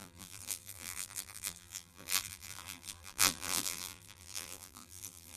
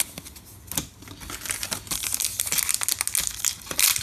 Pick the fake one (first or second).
first